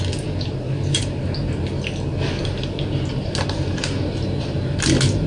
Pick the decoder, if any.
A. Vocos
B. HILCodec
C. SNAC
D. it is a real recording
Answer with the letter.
D